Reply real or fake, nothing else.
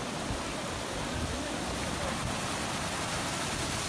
real